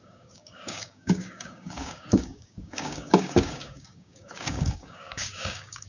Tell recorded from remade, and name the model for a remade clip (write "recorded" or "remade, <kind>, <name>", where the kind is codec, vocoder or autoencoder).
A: remade, codec, DAC